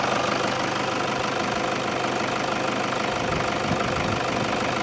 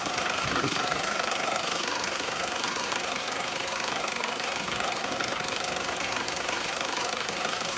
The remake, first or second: second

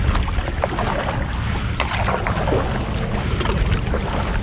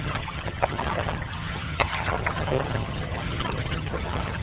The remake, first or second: second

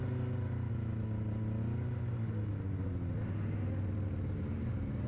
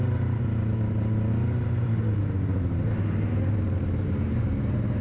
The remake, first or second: second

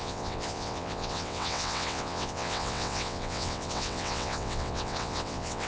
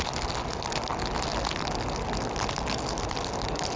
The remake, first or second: first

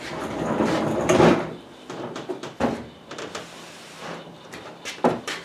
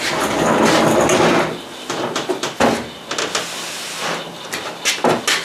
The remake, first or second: first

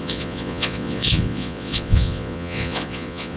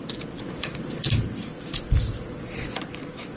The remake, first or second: first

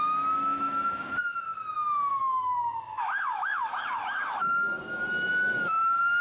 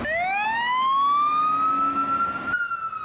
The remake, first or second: first